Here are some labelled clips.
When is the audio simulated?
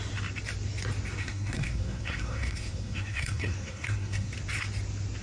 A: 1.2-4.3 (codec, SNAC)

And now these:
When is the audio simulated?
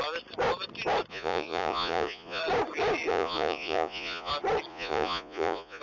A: 1.1-2.4 (vocoder, Vocos); 3.1-4.3; 4.7-5.8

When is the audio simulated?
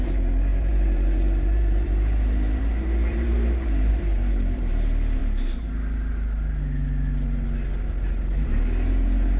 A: 0.0-5.2 (vocoder, BigVGAN v2); 8.9-9.4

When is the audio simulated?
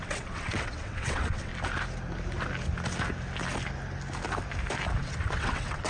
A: 0.0-1.5 (vocoder, WaveNeXt); 5.0-5.9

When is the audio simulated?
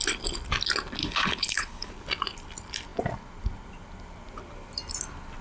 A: 1.0-1.9 (codec, HILCodec)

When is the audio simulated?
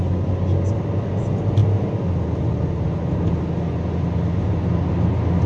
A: none